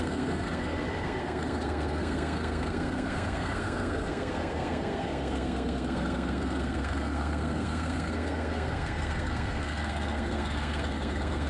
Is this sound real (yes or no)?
no